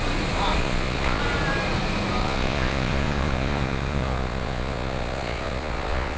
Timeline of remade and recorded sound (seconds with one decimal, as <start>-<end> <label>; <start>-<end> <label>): 0.0-0.6 recorded; 0.6-1.2 remade; 1.2-2.2 recorded; 2.2-6.2 remade